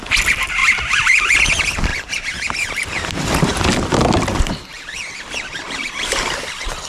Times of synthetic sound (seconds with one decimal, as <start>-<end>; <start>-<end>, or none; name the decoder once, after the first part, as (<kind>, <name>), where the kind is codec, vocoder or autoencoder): 0.6-1.2 (vocoder, BigVGAN v2); 1.9-3.6; 4.7-6.5